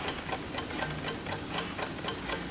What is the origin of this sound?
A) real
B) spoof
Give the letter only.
A